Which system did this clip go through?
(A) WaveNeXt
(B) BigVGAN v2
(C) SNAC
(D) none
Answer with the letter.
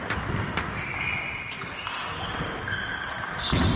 D